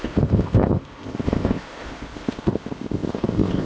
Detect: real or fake fake